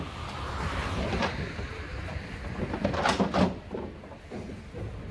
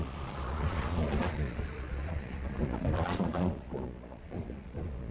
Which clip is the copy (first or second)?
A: second